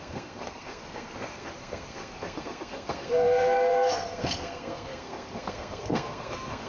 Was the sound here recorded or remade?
remade